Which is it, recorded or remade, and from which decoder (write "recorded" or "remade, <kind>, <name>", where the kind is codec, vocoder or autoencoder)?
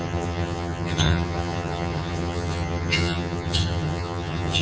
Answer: remade, vocoder, HiFi-GAN